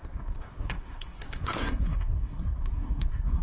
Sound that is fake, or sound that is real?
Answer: fake